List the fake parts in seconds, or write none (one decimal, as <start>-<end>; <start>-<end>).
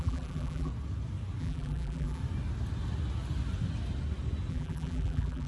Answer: 0.0-0.7; 1.4-2.2; 4.5-5.5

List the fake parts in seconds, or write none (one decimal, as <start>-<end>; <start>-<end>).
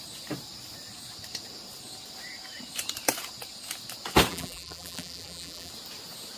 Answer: 4.3-5.7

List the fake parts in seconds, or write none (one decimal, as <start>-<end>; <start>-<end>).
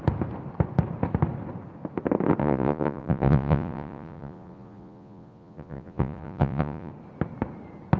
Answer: 2.4-6.9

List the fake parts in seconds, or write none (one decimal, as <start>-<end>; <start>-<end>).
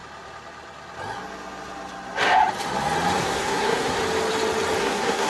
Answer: 3.2-4.0; 4.8-5.3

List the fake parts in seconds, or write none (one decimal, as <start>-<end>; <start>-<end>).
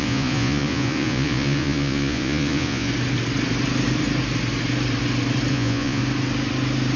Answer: 0.0-2.9; 5.5-6.0